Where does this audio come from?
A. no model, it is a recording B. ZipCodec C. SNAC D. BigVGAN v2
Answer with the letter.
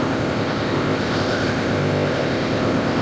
B